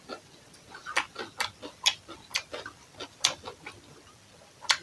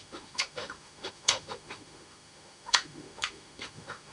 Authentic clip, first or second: first